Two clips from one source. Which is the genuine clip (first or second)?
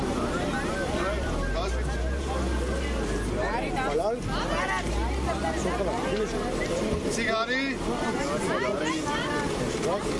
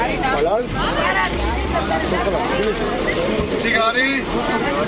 first